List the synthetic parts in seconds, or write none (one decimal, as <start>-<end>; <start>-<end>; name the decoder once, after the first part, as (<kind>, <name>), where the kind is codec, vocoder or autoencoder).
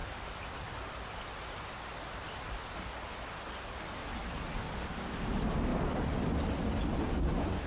none